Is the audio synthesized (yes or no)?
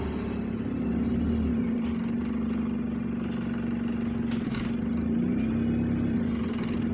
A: no